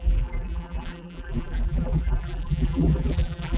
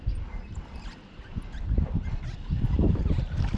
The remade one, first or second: first